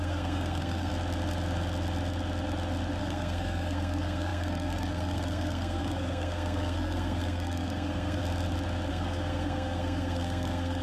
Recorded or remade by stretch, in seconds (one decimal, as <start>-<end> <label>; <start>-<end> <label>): 0.0-0.9 remade; 0.9-3.0 recorded; 3.0-8.2 remade; 8.2-8.9 recorded; 8.9-10.8 remade